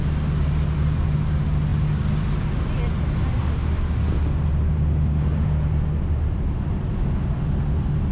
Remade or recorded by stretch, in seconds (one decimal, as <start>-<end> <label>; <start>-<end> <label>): 0.0-8.1 recorded